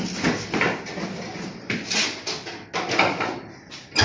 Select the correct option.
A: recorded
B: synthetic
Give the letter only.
A